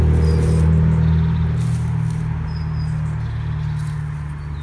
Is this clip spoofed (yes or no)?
no